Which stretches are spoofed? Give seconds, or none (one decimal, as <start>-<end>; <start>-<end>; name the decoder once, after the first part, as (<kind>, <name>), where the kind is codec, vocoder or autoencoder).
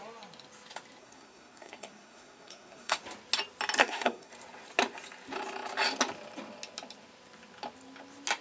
1.0-3.0 (codec, SNAC); 3.8-4.3